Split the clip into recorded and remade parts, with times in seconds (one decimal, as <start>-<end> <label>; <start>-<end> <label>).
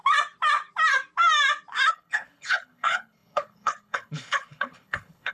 0.0-1.9 recorded; 1.9-5.3 remade